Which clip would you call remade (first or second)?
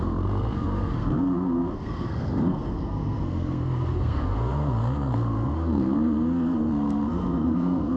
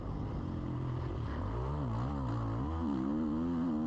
first